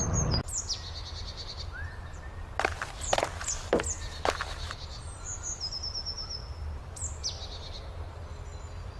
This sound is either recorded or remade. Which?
recorded